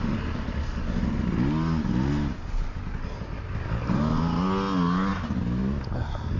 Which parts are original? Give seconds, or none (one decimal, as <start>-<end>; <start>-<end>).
0.0-6.4